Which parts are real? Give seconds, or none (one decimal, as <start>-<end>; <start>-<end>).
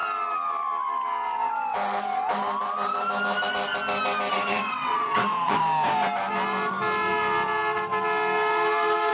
0.0-4.3; 5.6-9.1